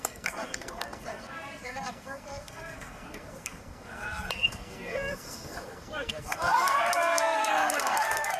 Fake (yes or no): yes